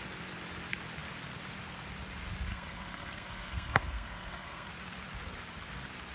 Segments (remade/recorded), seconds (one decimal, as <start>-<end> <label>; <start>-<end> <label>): 0.0-2.5 recorded; 2.5-4.7 remade; 4.7-6.1 recorded